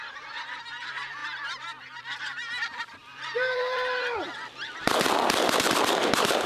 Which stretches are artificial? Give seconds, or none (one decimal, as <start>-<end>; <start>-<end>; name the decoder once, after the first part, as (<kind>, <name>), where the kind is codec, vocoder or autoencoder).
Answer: 0.0-1.2 (vocoder, BigVGAN v2); 2.0-6.5